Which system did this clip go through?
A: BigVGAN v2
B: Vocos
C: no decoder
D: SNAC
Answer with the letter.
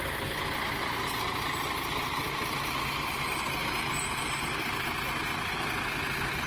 C